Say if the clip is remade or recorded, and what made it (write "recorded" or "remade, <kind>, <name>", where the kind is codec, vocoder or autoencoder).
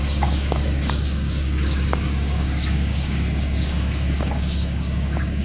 remade, codec, DAC